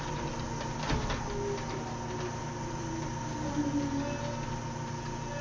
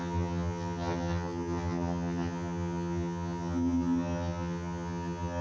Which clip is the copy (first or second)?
second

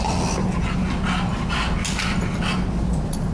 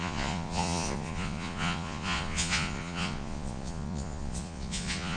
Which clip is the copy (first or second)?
second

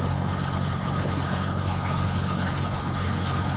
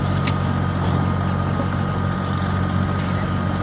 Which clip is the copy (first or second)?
first